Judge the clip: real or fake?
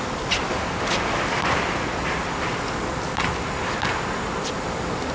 real